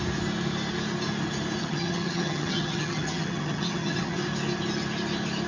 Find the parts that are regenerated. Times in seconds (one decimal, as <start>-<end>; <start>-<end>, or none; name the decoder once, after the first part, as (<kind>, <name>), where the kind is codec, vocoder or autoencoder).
1.6-4.2 (vocoder, HiFi-GAN)